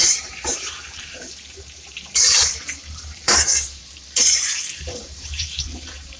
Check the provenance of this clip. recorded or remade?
remade